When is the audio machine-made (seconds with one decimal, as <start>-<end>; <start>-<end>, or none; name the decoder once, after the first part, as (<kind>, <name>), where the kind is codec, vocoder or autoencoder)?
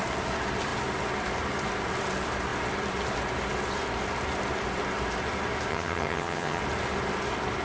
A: 5.7-6.6 (vocoder, HiFi-GAN)